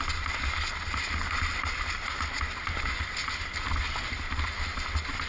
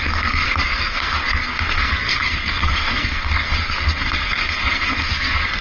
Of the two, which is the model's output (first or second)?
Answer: second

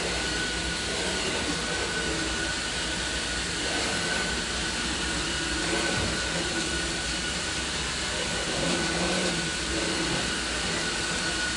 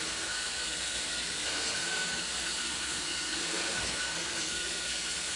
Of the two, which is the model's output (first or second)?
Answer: second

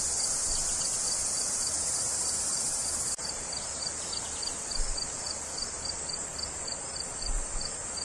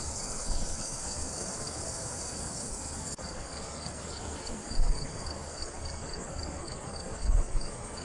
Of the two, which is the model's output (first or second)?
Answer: second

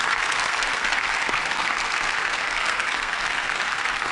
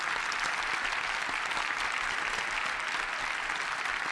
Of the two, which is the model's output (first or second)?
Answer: first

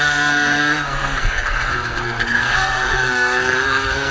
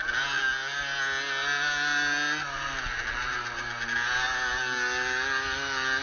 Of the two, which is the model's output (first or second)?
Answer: first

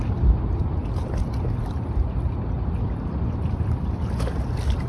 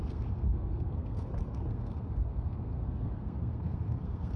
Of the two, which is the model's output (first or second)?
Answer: second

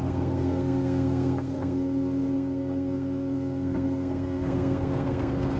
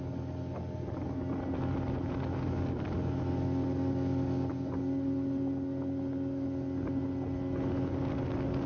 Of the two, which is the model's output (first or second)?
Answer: first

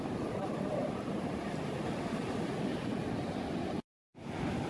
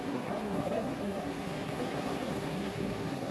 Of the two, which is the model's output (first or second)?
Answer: second